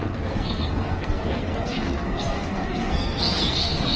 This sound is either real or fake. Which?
fake